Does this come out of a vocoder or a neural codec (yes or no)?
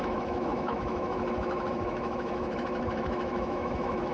yes